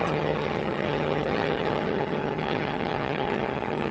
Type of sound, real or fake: fake